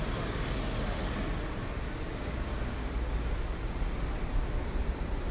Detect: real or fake real